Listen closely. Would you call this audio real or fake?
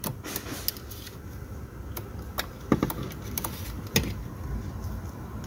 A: real